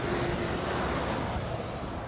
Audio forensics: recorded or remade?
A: recorded